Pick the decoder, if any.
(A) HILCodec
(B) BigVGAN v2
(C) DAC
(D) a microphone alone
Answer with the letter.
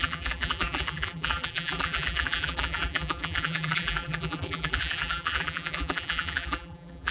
B